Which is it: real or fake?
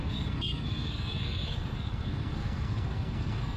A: fake